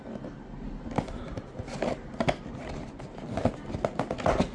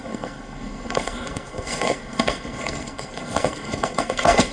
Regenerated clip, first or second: second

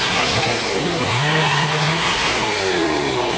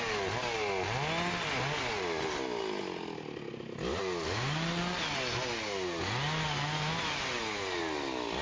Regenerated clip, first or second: first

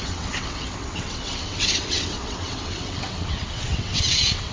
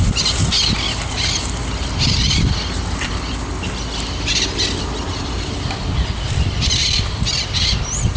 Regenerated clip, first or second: first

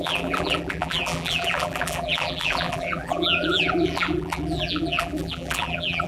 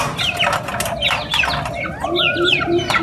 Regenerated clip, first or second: first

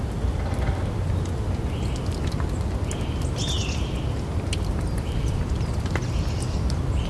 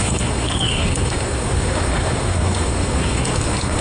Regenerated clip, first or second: second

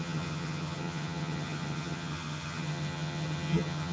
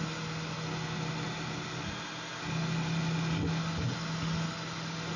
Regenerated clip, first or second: first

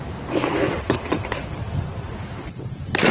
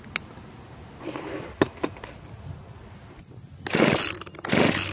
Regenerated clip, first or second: first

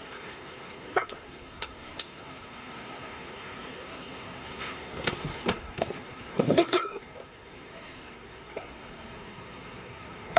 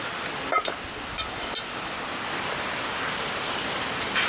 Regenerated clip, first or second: first